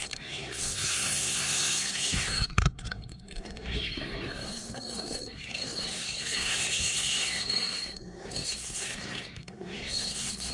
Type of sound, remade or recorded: remade